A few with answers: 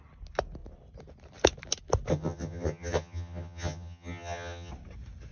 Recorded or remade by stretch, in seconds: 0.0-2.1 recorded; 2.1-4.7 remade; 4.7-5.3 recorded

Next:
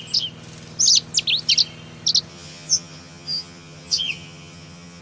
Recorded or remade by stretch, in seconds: 0.0-2.3 recorded; 2.3-5.0 remade

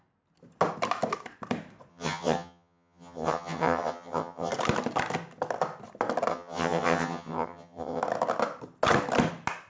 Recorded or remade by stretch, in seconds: 0.0-1.9 recorded; 1.9-4.5 remade; 4.5-6.3 recorded; 6.3-8.0 remade; 8.0-9.7 recorded

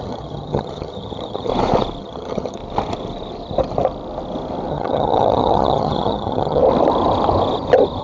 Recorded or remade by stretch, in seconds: 0.0-1.5 remade; 1.5-2.0 recorded; 2.0-2.6 remade; 2.6-4.7 recorded; 4.7-6.6 remade; 6.6-8.0 recorded

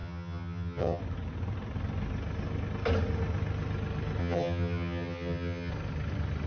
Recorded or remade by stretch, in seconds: 0.0-1.0 remade; 1.0-4.2 recorded; 4.2-5.7 remade; 5.7-6.5 recorded

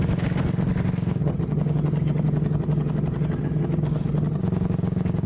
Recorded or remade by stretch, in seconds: 0.0-1.2 recorded; 1.2-4.4 remade; 4.4-5.3 recorded

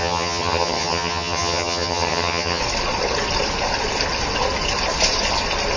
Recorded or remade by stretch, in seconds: 0.0-2.6 remade; 2.6-5.8 recorded